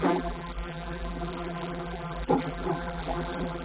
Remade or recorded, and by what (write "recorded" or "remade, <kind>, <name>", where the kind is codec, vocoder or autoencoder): remade, vocoder, BigVGAN v2